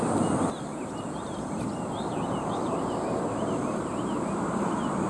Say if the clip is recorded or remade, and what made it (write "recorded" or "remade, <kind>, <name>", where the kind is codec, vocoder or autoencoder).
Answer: recorded